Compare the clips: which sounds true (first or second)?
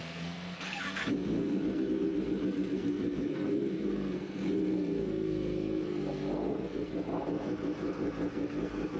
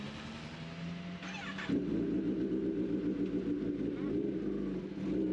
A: second